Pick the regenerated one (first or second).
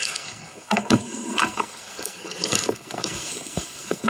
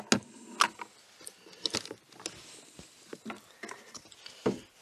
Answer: first